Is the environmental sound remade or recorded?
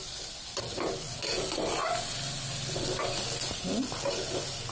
recorded